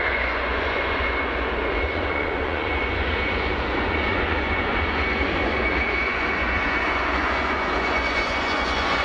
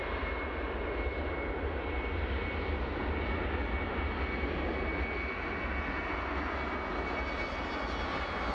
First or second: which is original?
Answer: second